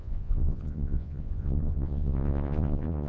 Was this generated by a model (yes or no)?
yes